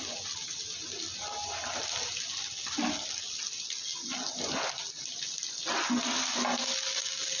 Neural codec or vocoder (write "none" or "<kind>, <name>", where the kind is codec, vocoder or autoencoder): none